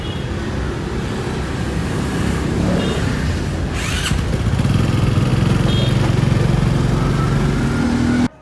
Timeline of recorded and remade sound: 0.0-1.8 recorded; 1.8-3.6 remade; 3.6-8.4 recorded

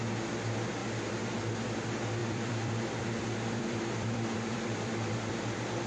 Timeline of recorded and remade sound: 0.0-2.2 recorded; 2.2-5.9 remade